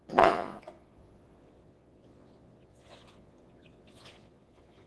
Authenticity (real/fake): fake